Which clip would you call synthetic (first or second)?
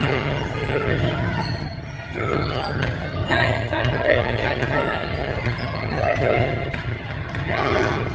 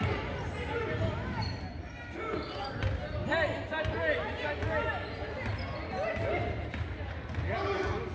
first